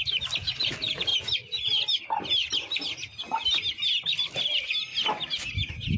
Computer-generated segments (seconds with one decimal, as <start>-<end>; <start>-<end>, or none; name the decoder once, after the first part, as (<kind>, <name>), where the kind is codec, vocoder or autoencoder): none